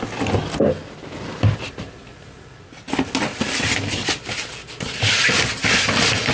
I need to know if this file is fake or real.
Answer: real